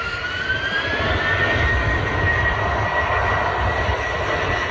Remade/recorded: recorded